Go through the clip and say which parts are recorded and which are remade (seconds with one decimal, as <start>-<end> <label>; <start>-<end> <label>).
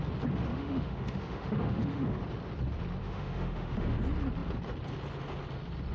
0.0-0.5 recorded; 0.5-2.2 remade; 2.2-3.0 recorded; 3.0-4.0 remade; 4.0-5.9 recorded